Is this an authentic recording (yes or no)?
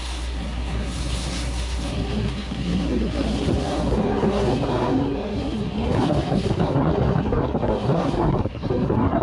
no